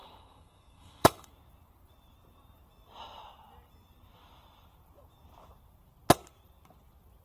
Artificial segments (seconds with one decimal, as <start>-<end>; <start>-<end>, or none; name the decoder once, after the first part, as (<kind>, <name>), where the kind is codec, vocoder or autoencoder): 0.0-1.3 (autoencoder, DAC-VAE)